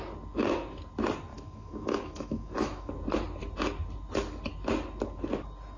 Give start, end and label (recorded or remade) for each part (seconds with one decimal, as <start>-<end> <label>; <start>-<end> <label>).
0.0-1.3 recorded; 1.3-2.9 remade; 2.9-5.8 recorded